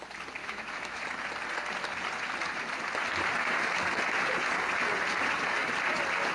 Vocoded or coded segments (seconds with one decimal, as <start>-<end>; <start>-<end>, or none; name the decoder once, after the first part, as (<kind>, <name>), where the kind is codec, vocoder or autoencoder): 0.4-1.0 (autoencoder, DAC-VAE)